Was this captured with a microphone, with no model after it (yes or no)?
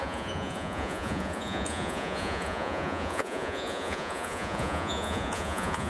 no